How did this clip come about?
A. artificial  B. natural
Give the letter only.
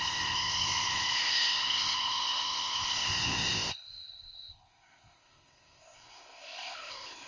A